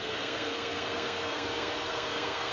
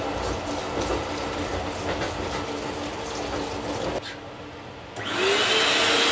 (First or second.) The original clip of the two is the second